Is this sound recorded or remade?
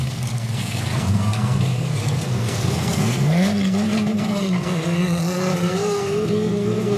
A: remade